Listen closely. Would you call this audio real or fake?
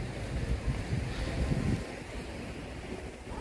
real